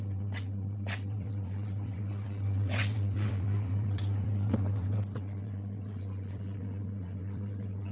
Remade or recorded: remade